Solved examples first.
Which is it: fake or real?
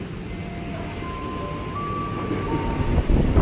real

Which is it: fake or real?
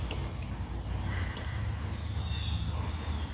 real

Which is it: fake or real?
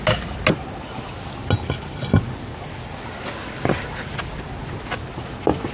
real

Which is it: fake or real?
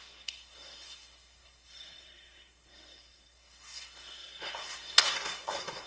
fake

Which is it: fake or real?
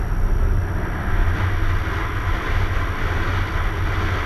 real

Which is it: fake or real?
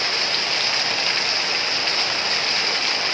real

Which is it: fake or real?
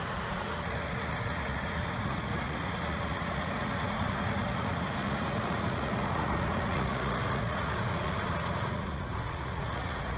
fake